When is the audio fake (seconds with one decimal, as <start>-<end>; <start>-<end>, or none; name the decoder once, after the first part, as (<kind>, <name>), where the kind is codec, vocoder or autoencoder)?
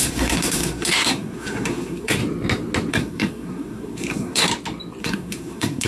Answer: 0.0-2.2 (codec, SNAC); 2.9-4.5; 5.0-5.9